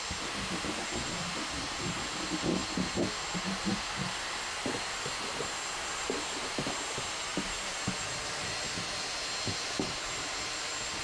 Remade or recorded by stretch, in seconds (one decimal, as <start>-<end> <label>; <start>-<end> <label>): 0.0-11.0 recorded